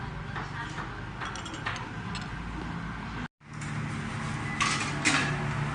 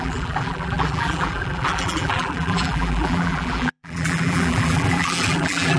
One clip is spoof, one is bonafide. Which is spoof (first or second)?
second